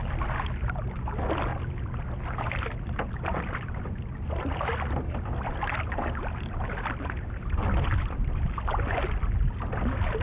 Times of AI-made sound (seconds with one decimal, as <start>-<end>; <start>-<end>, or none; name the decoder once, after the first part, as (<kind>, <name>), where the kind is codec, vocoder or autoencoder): none